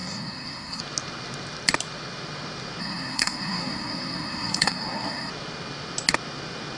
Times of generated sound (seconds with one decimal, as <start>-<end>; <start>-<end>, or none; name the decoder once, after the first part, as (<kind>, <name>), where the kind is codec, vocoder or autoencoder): 0.0-0.8 (codec, SNAC); 2.8-5.3